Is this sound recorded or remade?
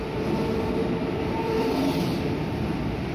remade